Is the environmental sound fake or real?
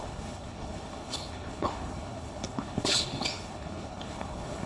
fake